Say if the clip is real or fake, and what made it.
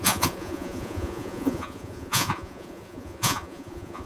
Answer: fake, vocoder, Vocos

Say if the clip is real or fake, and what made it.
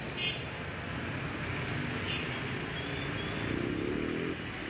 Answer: real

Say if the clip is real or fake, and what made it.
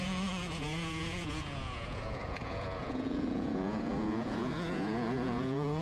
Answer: fake, vocoder, Vocos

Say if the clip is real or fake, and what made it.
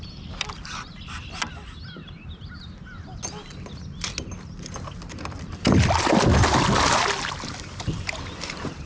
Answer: real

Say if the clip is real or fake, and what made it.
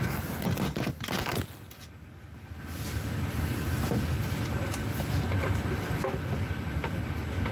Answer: real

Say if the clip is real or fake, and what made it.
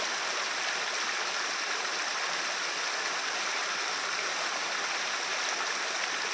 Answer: real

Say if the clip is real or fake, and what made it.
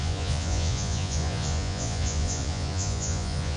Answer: fake, vocoder, Vocos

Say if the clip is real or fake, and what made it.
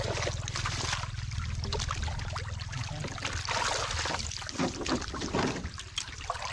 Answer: real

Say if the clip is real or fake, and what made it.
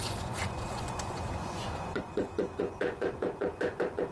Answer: fake, vocoder, Vocos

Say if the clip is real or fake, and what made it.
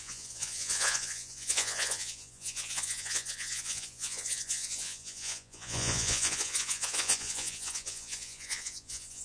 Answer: fake, vocoder, Vocos